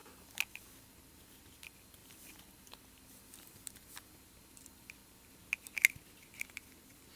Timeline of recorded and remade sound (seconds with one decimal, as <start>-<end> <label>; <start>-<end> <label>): 0.0-7.2 recorded